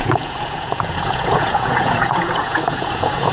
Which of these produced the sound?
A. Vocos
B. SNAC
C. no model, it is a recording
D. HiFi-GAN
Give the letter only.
A